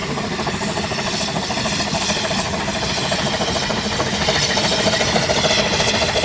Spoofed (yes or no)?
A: no